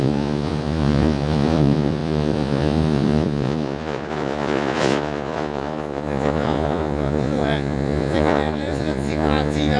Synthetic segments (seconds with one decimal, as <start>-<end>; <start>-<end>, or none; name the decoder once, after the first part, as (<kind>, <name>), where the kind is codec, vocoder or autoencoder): 0.0-9.8 (vocoder, Vocos)